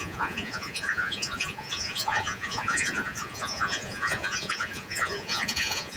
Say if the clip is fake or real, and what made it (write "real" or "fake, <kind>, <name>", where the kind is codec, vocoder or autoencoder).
fake, vocoder, Vocos